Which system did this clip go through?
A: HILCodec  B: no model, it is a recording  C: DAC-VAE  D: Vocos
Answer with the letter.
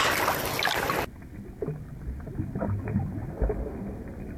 B